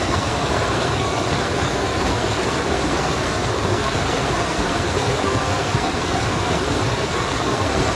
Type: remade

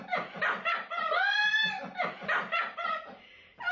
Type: remade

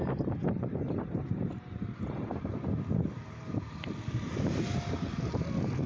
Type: remade